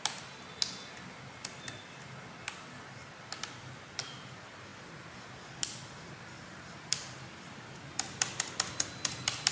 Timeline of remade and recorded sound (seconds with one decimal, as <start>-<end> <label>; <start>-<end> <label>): 0.0-9.5 recorded